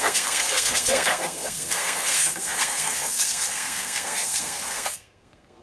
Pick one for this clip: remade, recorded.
remade